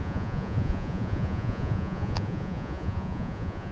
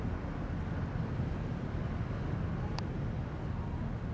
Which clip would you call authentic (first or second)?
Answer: second